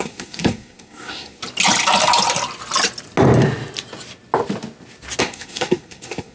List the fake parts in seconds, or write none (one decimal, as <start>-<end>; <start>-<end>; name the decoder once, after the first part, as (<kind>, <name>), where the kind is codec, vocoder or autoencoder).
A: 0.0-1.4 (codec, SNAC); 5.2-6.3